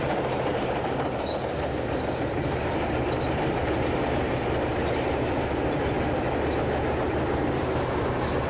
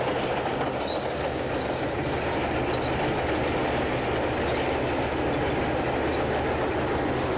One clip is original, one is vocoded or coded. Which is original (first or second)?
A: second